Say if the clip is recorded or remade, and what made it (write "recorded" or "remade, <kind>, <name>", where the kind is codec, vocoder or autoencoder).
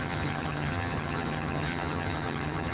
remade, vocoder, HiFi-GAN